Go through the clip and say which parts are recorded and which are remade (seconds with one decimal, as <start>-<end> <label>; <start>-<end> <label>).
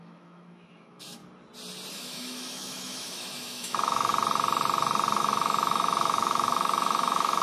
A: 0.0-1.2 remade; 1.2-1.9 recorded; 1.9-4.1 remade; 4.1-5.2 recorded; 5.2-7.4 remade